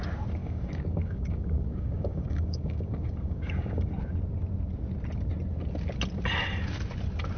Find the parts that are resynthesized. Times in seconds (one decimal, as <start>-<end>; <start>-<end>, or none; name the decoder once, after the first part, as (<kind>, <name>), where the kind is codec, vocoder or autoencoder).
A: 0.4-3.9 (codec, DAC)